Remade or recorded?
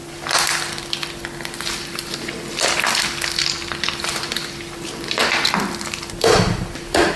remade